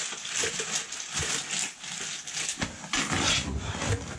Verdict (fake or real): real